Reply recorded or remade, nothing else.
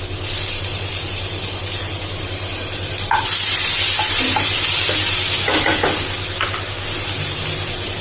recorded